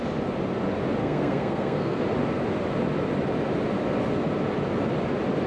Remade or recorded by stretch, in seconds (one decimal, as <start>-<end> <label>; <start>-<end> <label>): 0.0-1.0 recorded; 1.0-2.0 remade; 2.0-5.5 recorded